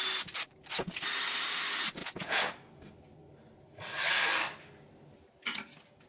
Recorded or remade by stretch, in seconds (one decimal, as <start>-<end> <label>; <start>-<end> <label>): 0.0-2.0 recorded; 2.0-2.5 remade; 2.5-6.1 recorded